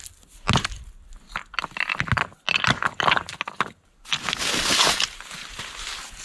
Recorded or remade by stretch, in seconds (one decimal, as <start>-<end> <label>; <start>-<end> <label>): 0.0-6.2 recorded